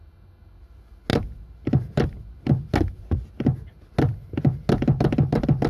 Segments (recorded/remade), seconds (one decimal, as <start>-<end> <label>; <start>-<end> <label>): 0.0-1.1 recorded; 1.1-2.5 remade; 2.5-5.7 recorded